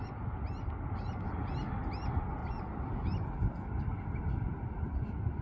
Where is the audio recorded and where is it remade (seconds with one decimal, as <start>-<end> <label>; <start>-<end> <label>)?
0.0-5.4 recorded